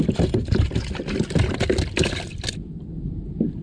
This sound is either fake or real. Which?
real